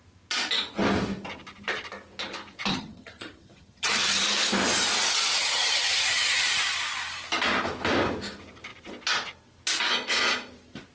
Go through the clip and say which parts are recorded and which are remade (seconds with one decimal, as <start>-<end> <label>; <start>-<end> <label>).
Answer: 0.0-2.7 recorded; 2.7-4.2 remade; 4.2-5.4 recorded; 5.4-6.4 remade; 6.4-10.9 recorded